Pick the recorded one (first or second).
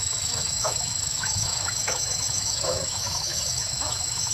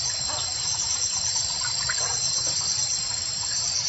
second